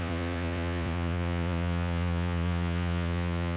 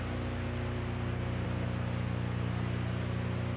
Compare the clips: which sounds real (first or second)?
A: second